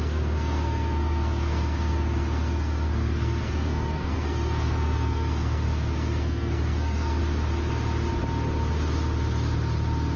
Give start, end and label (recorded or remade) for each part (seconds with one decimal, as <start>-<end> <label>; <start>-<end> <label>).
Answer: 0.0-7.2 remade; 7.2-10.2 recorded